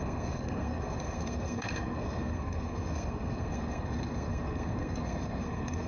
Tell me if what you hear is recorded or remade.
remade